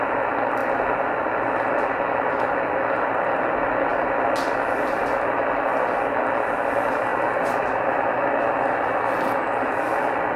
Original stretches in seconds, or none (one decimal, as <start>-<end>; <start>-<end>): 0.0-10.4